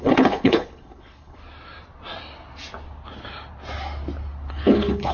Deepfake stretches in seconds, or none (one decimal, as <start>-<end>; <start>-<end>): 0.0-1.4; 4.5-5.1